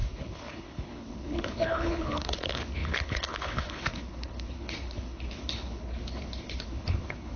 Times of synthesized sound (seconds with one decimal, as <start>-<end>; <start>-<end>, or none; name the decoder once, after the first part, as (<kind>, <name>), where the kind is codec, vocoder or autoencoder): 0.0-7.4 (codec, HILCodec)